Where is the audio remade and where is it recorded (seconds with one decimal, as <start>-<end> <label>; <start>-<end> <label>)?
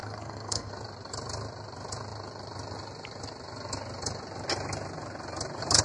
0.0-0.7 remade; 0.7-5.8 recorded